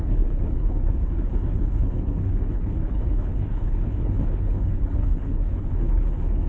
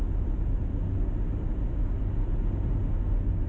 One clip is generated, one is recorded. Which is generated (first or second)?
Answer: first